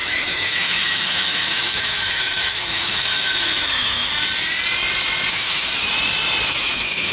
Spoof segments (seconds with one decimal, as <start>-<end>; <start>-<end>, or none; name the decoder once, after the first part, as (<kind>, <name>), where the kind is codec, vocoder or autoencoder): 0.0-4.1 (autoencoder, DAC-VAE); 5.3-5.7; 6.5-7.1

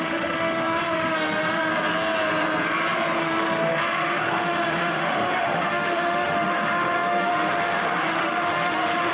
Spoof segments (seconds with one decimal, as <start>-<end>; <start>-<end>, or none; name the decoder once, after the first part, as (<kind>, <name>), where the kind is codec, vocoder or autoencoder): 0.0-1.7 (autoencoder, DAC-VAE); 3.2-9.1

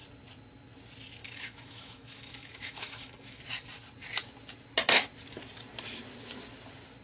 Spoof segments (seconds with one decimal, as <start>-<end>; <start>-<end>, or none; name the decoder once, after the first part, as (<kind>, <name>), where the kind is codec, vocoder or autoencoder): 1.2-3.4 (autoencoder, DAC-VAE)

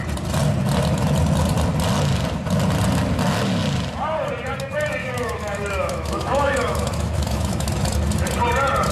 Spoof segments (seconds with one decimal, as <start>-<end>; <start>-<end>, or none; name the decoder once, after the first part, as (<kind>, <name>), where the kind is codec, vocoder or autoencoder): 5.0-7.7 (autoencoder, DAC-VAE)

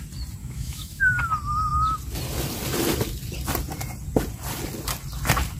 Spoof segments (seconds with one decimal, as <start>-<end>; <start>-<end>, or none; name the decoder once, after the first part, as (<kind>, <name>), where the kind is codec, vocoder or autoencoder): 0.4-1.0 (autoencoder, DAC-VAE)

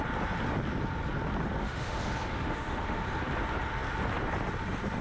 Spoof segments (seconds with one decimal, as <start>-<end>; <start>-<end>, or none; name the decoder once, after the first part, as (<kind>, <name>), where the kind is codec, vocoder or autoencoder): 1.6-3.0 (autoencoder, DAC-VAE)

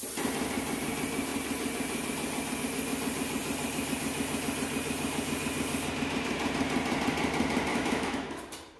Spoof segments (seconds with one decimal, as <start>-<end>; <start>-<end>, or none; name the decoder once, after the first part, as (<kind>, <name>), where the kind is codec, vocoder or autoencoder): 7.7-8.4 (autoencoder, DAC-VAE)